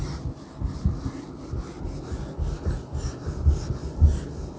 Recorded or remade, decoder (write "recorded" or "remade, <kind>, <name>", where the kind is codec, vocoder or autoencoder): recorded